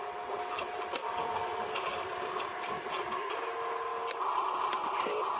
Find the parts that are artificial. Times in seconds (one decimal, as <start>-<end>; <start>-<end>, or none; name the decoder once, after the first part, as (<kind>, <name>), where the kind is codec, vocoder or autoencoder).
none